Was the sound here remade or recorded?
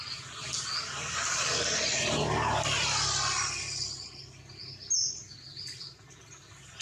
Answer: recorded